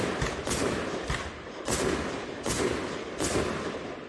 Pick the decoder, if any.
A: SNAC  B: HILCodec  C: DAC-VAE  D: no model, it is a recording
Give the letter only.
D